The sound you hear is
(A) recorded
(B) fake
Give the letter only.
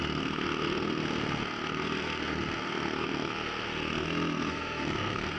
B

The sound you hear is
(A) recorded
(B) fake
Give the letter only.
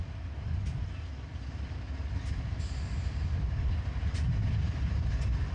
A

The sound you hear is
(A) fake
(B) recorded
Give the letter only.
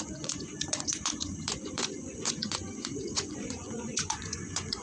A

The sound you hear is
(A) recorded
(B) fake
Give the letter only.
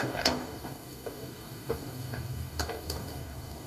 B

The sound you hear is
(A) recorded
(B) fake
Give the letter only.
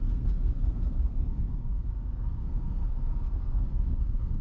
B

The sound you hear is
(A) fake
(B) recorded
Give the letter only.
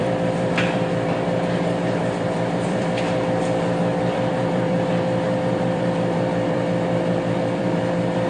A